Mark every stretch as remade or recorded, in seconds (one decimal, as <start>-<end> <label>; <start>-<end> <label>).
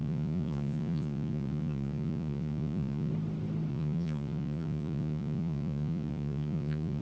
0.0-3.1 remade; 3.1-3.7 recorded; 3.7-7.0 remade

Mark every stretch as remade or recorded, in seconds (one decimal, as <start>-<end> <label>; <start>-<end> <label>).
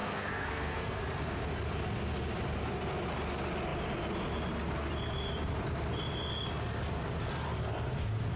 0.0-1.0 remade; 1.0-8.4 recorded